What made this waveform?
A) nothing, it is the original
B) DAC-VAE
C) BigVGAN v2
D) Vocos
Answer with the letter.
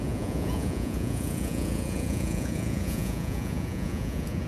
D